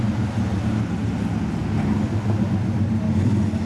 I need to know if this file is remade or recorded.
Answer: recorded